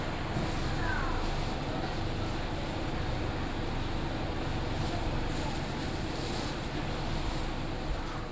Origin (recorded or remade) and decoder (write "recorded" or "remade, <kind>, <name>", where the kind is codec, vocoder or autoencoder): recorded